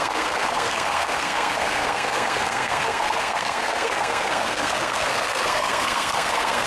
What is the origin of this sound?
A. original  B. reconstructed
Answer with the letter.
B